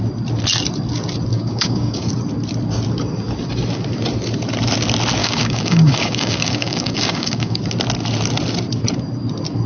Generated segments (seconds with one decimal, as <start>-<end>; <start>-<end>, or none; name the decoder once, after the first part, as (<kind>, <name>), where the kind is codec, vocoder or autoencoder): 1.3-2.1 (codec, DAC); 5.2-7.6